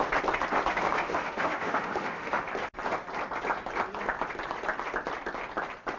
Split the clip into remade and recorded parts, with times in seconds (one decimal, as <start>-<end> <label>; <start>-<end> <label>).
0.0-0.7 recorded; 0.7-2.4 remade; 2.4-6.0 recorded